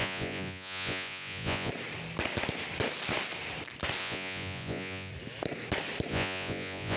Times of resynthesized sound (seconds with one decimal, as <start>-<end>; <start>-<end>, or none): 0.0-1.7; 4.0-5.1; 6.1-7.0